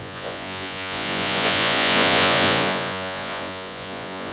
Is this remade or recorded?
remade